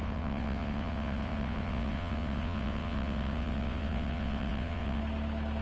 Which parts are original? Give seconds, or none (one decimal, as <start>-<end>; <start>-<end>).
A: 5.0-5.6